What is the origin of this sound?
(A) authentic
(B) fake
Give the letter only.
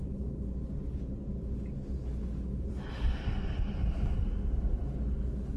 A